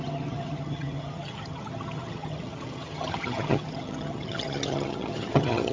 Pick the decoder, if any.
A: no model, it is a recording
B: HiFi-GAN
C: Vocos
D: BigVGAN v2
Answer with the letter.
B